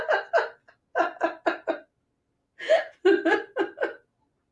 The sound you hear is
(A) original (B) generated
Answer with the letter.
A